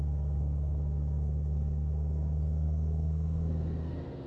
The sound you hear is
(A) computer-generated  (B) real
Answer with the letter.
A